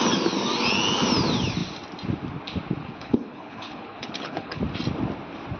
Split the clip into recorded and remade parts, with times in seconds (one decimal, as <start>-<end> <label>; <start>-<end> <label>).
0.0-2.8 recorded; 2.8-4.6 remade; 4.6-5.6 recorded